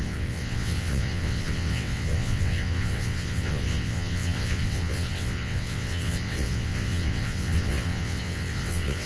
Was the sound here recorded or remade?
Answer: remade